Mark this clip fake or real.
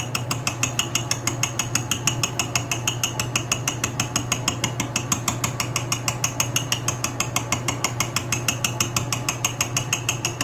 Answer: real